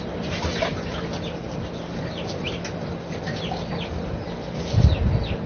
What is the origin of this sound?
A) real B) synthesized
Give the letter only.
A